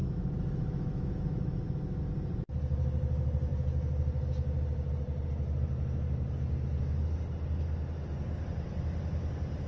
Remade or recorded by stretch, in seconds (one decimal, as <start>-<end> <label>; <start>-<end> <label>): 0.0-2.0 remade; 2.0-9.7 recorded